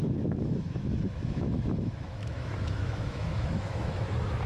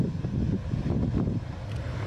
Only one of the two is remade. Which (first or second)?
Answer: first